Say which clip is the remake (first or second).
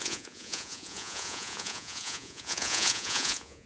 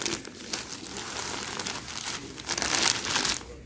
first